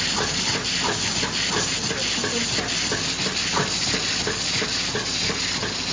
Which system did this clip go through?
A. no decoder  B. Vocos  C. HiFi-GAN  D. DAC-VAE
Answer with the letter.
A